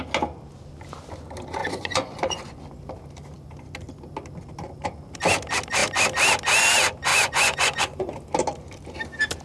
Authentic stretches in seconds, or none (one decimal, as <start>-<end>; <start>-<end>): 0.0-1.6; 2.6-7.1; 8.1-9.4